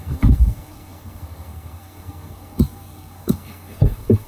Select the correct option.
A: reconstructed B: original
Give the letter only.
A